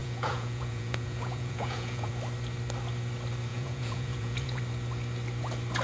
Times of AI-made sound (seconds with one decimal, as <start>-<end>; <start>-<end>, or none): 0.0-2.1; 3.5-4.6